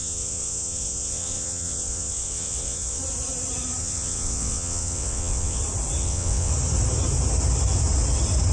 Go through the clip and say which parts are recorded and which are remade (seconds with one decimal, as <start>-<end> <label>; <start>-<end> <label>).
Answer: 0.0-3.0 remade; 3.0-3.8 recorded; 3.8-5.6 remade; 5.6-6.0 recorded; 6.0-6.5 remade; 6.5-8.5 recorded

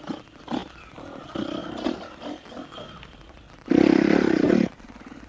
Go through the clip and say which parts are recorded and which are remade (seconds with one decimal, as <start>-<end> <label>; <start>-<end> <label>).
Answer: 0.0-5.3 recorded

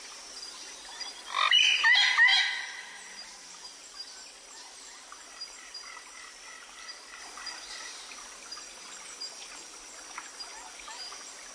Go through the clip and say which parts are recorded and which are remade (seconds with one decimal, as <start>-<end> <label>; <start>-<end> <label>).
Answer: 0.0-11.5 recorded

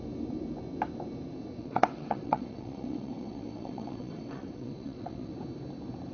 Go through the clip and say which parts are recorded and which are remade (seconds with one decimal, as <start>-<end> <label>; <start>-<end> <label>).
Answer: 0.0-1.6 recorded; 1.6-5.3 remade; 5.3-6.1 recorded

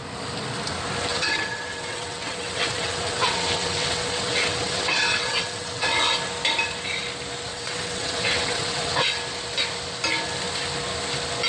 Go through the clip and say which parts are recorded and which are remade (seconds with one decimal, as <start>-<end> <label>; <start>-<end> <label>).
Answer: 0.0-1.1 recorded; 1.1-6.1 remade; 6.1-7.5 recorded; 7.5-9.2 remade; 9.2-11.5 recorded

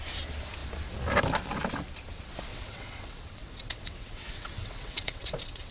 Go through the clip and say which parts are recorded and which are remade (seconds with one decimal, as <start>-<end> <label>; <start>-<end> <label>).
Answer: 0.0-2.5 recorded; 2.5-5.7 remade

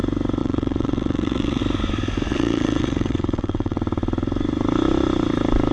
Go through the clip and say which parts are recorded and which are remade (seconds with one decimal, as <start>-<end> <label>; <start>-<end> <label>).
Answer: 0.0-0.4 recorded; 0.4-1.6 remade; 1.6-2.3 recorded; 2.3-3.8 remade; 3.8-5.7 recorded

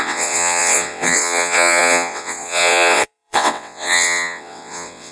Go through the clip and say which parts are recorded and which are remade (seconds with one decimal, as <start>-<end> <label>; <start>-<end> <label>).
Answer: 0.0-5.1 remade